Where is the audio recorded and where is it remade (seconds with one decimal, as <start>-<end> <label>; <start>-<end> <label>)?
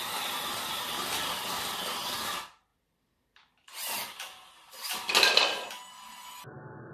0.0-6.9 recorded